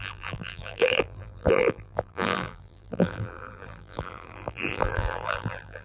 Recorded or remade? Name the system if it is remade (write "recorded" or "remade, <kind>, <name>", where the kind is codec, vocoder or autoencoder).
remade, vocoder, BigVGAN v2